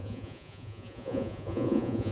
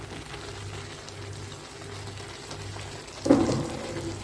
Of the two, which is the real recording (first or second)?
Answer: second